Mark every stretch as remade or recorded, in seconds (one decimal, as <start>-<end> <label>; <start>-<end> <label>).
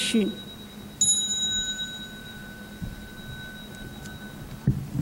0.0-2.2 recorded; 2.2-2.7 remade; 2.7-5.0 recorded